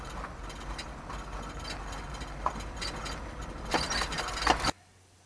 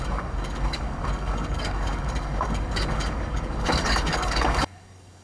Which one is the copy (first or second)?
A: second